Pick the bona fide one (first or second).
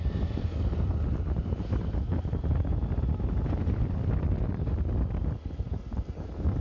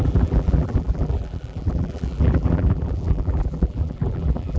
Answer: first